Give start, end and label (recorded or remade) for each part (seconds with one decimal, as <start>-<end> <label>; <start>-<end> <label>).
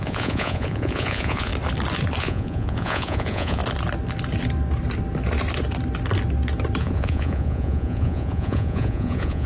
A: 0.0-1.5 remade; 1.5-2.2 recorded; 2.2-3.6 remade; 3.6-6.8 recorded; 6.8-9.5 remade